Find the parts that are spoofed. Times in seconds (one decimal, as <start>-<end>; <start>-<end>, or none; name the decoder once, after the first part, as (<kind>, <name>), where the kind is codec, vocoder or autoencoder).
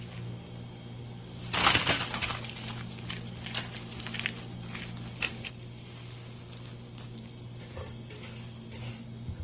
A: none